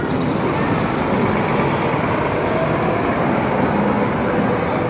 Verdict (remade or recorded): recorded